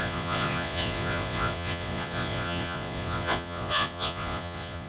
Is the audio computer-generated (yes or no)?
yes